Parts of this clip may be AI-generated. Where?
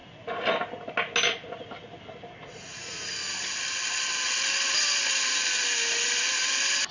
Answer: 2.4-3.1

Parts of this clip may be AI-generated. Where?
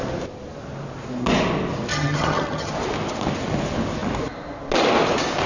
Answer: 1.9-2.7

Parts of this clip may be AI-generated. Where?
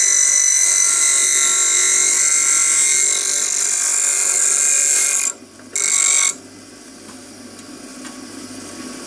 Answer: none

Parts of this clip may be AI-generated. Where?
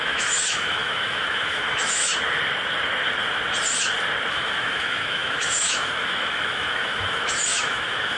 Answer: 0.0-2.1; 4.3-8.2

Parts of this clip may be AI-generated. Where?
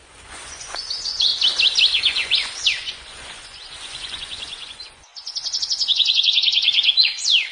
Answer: 0.0-1.3; 2.0-7.5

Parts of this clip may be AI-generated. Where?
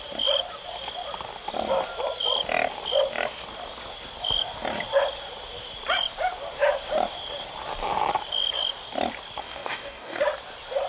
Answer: 9.4-10.2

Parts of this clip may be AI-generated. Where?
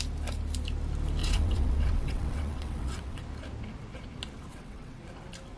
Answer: 1.2-3.2; 4.5-5.0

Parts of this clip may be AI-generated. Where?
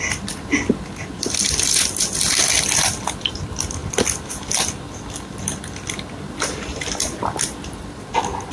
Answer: none